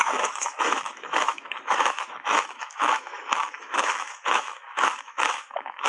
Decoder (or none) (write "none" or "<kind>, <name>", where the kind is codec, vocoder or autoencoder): autoencoder, DAC-VAE